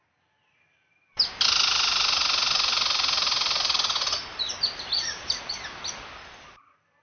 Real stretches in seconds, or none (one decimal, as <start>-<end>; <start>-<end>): 0.0-7.0